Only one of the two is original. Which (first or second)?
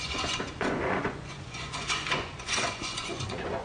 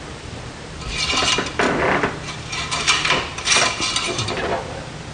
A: second